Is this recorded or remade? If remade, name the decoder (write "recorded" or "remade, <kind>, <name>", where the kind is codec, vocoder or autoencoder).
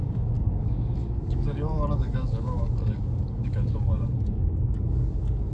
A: remade, codec, DAC